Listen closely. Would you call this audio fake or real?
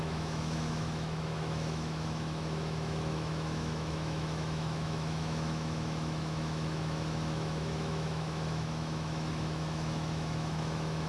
fake